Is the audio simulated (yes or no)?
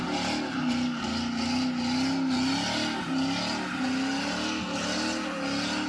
no